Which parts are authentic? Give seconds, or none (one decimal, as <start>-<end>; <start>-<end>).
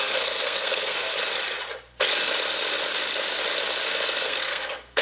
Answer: 1.1-4.1